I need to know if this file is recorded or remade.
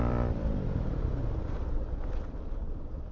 remade